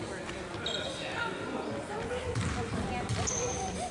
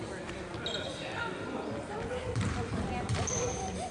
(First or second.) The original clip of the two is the first